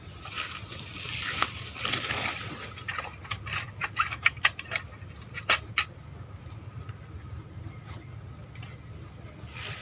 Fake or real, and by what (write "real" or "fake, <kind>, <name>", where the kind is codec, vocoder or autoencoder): real